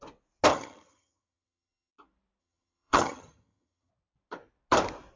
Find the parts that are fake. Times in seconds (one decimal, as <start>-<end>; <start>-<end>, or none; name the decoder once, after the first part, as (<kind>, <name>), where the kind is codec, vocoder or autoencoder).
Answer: 0.5-1.9 (vocoder, HiFi-GAN); 2.4-3.9